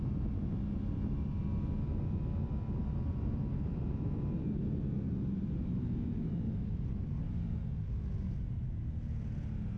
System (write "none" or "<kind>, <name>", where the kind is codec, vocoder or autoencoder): none